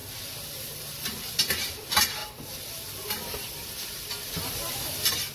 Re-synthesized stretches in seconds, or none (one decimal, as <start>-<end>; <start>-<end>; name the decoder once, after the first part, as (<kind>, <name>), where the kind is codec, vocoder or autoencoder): 1.3-5.3 (vocoder, BigVGAN v2)